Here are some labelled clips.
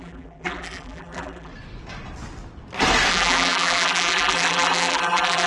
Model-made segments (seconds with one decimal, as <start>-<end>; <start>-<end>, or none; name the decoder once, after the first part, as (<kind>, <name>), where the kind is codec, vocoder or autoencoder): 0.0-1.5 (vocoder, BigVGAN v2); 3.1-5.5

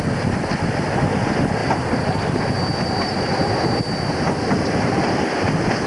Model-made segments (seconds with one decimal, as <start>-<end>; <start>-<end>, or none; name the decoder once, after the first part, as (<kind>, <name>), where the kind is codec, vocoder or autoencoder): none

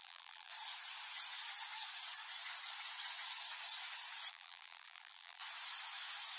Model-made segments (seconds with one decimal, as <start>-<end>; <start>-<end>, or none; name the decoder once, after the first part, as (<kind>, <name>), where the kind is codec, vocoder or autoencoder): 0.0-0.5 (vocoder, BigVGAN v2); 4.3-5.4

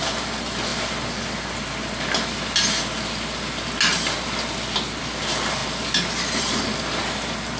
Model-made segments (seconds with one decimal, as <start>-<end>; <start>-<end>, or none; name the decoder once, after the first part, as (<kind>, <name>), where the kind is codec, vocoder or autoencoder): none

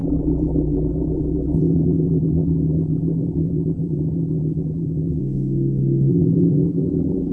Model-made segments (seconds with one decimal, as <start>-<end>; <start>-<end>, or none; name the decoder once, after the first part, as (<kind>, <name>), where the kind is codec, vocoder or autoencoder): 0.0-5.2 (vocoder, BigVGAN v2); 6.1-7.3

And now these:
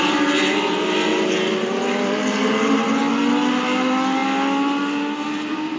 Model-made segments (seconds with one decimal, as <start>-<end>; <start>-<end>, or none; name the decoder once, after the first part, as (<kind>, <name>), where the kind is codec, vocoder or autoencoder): 1.1-1.8 (vocoder, BigVGAN v2); 2.4-3.0